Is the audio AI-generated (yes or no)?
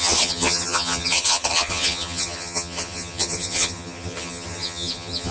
yes